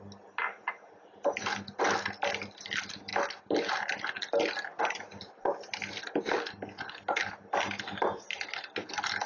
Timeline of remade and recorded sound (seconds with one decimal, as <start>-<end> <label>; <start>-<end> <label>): 0.0-9.3 recorded